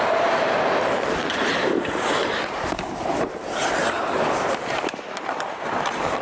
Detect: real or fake fake